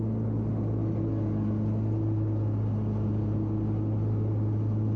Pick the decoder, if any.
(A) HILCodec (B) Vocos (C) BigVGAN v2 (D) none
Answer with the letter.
D